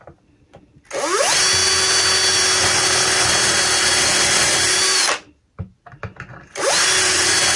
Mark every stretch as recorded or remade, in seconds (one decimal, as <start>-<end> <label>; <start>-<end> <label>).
0.0-7.6 recorded

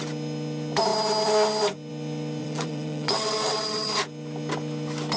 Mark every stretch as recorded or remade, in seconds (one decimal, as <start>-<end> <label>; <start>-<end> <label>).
0.0-2.4 recorded; 2.4-3.9 remade; 3.9-5.2 recorded

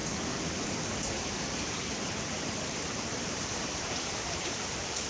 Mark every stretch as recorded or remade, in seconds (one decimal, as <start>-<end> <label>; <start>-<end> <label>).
0.0-2.6 recorded; 2.6-5.1 remade

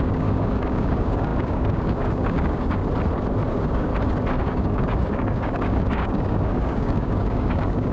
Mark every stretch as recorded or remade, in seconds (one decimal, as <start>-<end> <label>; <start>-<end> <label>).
0.0-2.8 remade; 2.8-3.5 recorded; 3.5-3.9 remade; 3.9-4.4 recorded; 4.4-7.9 remade